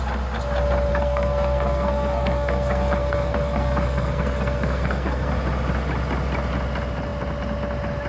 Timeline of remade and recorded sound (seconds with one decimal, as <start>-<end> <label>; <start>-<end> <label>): 0.0-0.9 recorded; 0.9-5.3 remade; 5.3-8.1 recorded